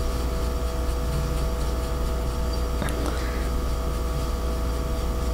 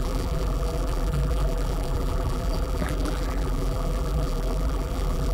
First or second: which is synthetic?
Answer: second